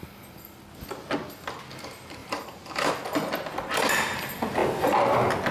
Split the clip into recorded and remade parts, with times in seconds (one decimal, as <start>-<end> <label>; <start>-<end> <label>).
0.0-2.2 recorded; 2.2-2.9 remade; 2.9-5.5 recorded